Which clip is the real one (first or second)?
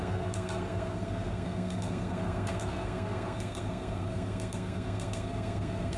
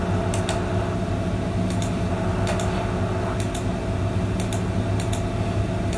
second